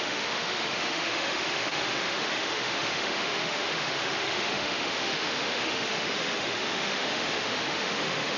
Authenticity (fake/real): fake